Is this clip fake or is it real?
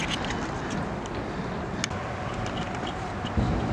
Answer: real